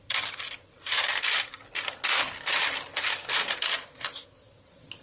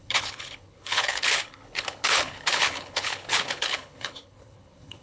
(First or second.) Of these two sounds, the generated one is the second